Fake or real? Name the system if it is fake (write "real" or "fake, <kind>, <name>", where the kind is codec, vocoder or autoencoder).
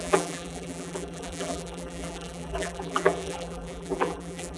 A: fake, vocoder, BigVGAN v2